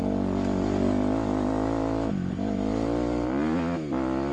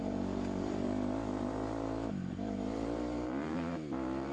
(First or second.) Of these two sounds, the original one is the first